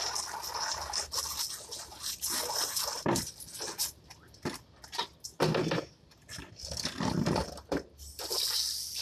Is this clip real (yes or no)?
yes